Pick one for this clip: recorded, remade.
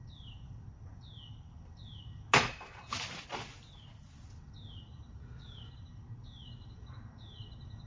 recorded